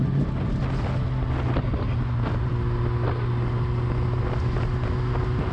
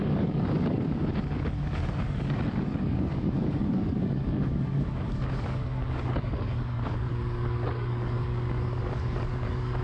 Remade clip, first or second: second